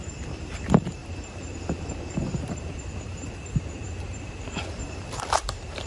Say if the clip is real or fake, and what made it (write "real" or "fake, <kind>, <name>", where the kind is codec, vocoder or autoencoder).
fake, vocoder, BigVGAN v2